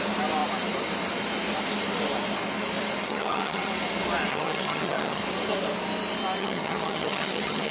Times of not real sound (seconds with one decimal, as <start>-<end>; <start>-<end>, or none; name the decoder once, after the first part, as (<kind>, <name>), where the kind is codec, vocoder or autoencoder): 3.0-3.7 (vocoder, HiFi-GAN); 4.3-5.2; 6.4-7.7